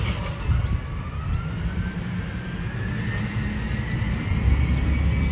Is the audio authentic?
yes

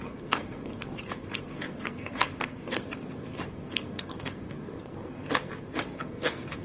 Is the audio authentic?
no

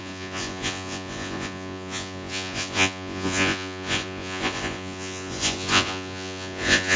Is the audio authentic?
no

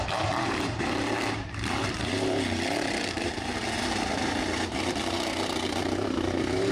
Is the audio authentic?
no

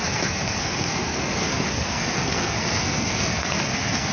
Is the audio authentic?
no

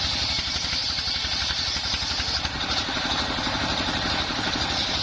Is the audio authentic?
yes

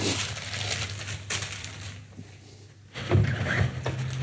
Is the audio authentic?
yes